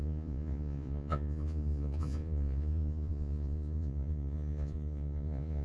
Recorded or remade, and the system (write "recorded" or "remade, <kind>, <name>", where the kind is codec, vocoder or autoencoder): remade, vocoder, Vocos